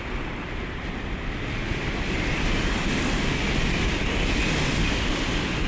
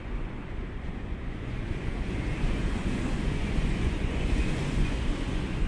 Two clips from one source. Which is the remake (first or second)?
second